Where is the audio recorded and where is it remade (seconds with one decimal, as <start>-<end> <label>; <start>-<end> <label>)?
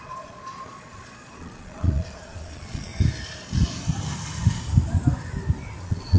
0.0-2.9 remade; 2.9-5.8 recorded; 5.8-6.2 remade